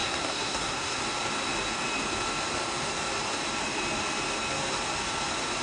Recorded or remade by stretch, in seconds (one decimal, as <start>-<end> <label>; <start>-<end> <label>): 0.0-1.0 remade; 1.0-5.6 recorded